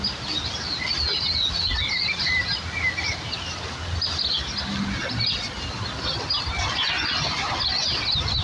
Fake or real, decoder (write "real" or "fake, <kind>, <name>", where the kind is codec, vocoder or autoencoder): real